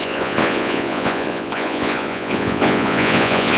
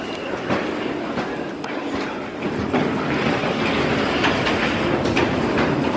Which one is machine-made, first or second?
first